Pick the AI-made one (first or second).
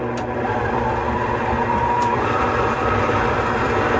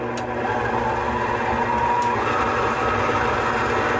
first